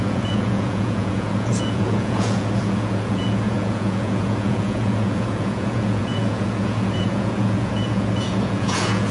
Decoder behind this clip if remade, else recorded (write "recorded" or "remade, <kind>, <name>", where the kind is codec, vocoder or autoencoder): remade, vocoder, Vocos